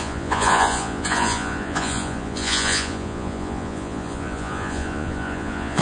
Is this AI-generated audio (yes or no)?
yes